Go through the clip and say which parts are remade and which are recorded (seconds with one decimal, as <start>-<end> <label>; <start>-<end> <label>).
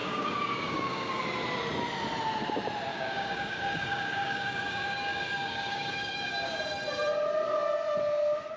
0.0-1.2 remade; 1.2-2.9 recorded; 2.9-6.6 remade; 6.6-8.6 recorded